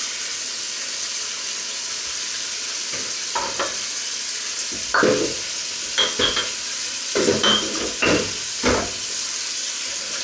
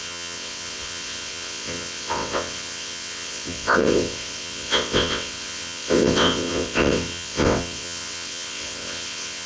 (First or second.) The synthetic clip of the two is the second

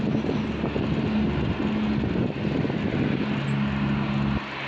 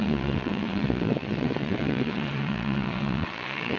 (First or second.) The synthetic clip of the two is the second